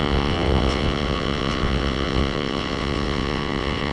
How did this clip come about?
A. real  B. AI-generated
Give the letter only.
B